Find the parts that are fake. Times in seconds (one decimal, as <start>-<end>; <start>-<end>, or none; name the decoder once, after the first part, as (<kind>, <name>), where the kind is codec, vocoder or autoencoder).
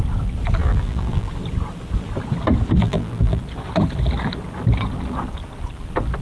0.6-1.3 (vocoder, BigVGAN v2); 2.8-3.4